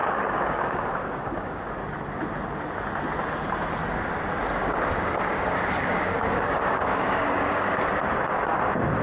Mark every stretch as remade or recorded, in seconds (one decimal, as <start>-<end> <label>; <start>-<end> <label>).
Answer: 0.0-1.6 remade; 1.6-4.6 recorded; 4.6-7.8 remade; 7.8-9.0 recorded

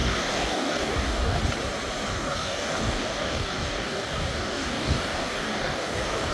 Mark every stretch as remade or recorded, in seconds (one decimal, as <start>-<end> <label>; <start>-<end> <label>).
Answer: 0.0-1.4 remade; 1.4-2.1 recorded; 2.1-6.3 remade

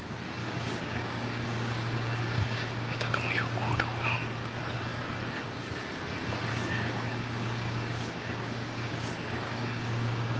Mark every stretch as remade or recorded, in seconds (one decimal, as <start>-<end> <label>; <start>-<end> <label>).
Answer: 0.0-0.4 recorded; 0.4-3.1 remade; 3.1-6.5 recorded; 6.5-10.4 remade

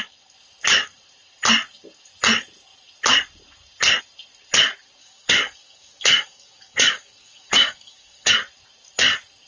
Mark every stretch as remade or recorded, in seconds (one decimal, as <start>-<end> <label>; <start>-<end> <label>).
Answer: 0.0-5.0 recorded; 5.0-8.3 remade; 8.3-9.5 recorded

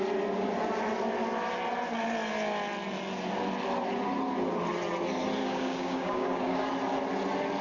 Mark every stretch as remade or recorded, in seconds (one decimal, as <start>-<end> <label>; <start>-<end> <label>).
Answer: 0.0-5.4 recorded; 5.4-6.7 remade; 6.7-7.6 recorded